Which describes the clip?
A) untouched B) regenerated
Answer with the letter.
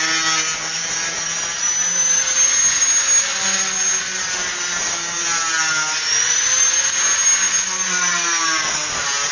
A